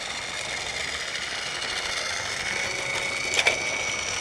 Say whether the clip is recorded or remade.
recorded